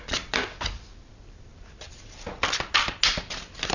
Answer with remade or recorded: recorded